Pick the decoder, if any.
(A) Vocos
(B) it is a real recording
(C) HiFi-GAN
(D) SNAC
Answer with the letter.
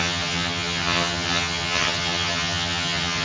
C